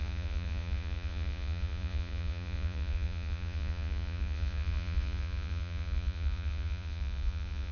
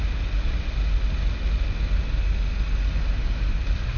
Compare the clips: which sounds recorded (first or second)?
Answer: second